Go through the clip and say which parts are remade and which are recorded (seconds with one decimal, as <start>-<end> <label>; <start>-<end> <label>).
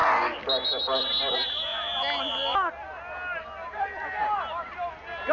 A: 0.0-5.3 recorded